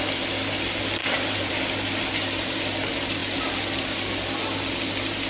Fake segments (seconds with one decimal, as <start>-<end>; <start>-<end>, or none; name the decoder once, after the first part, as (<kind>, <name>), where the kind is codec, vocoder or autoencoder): 1.0-1.5 (vocoder, BigVGAN v2)